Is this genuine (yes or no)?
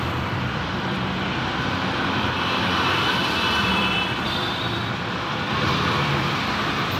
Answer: no